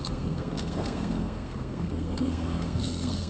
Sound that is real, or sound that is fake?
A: fake